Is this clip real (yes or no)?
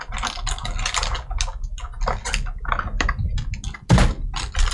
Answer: yes